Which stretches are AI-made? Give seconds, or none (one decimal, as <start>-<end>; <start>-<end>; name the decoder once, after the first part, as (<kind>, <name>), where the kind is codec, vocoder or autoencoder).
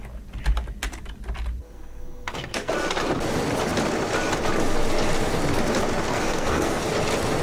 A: 1.6-2.7 (codec, SNAC); 6.1-6.8